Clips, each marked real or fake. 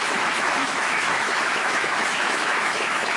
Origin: fake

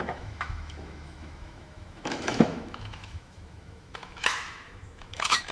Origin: fake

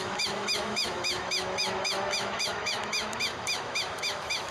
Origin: fake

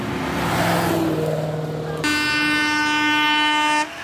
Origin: real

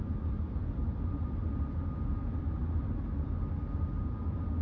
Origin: real